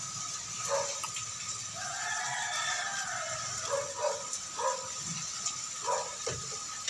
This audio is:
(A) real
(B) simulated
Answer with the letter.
A